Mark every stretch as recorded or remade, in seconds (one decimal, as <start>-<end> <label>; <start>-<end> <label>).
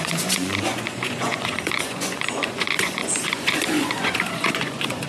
0.0-5.1 remade